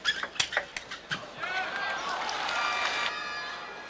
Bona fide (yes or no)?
yes